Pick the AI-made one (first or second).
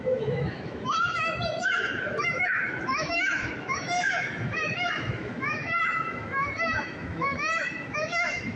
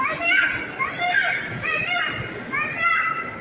first